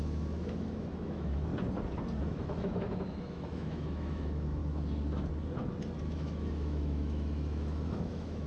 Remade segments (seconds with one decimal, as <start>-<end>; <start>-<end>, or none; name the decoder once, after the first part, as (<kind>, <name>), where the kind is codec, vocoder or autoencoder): 0.0-1.5 (autoencoder, DAC-VAE); 2.2-4.6; 6.0-8.5